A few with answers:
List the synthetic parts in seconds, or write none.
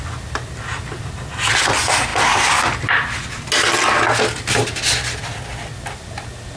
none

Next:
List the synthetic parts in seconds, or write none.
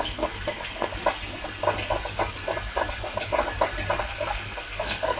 0.0-0.9 (codec, SNAC); 4.0-5.2